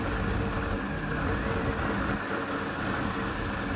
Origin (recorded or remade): recorded